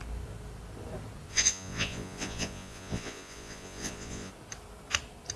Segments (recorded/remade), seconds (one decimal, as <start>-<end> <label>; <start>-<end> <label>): 0.0-1.3 recorded; 1.3-4.3 remade; 4.3-5.4 recorded